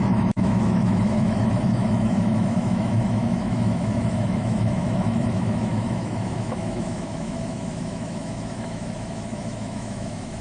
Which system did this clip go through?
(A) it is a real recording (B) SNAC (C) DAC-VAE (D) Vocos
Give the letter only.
C